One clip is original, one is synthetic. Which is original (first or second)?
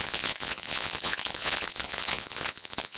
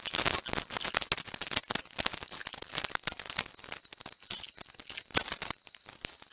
second